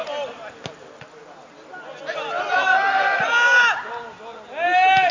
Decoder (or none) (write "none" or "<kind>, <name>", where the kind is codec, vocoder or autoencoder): none